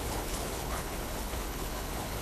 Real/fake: fake